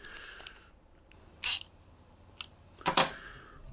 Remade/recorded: recorded